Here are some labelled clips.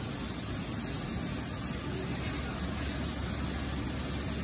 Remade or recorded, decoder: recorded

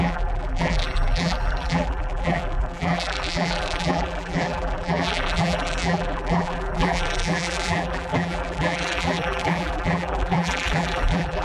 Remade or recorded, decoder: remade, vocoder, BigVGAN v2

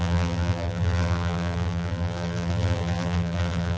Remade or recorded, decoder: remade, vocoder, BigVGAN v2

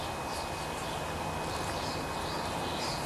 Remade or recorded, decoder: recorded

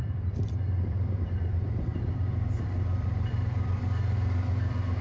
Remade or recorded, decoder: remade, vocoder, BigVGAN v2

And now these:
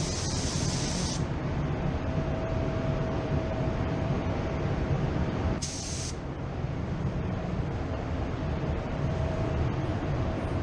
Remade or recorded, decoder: remade, vocoder, BigVGAN v2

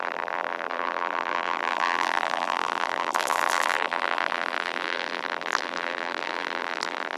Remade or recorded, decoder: remade, vocoder, BigVGAN v2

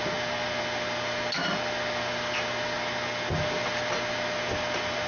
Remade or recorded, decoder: recorded